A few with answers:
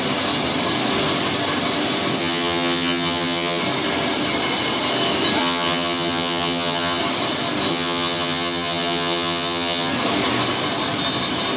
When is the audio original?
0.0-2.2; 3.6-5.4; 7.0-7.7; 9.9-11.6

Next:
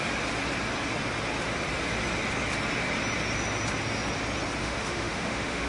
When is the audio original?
0.0-4.6

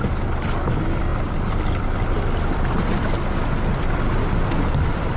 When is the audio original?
0.0-5.2

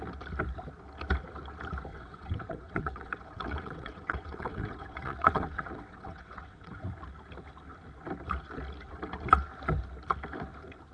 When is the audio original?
0.0-1.9; 6.8-10.9

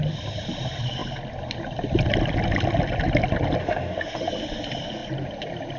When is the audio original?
0.0-3.6; 4.3-5.8

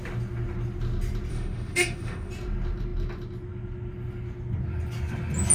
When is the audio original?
0.0-1.3; 2.3-5.5

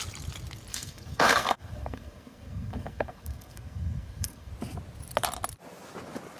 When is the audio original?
0.0-0.7; 4.5-6.4